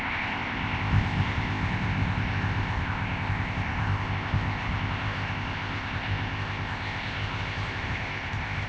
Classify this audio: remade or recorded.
remade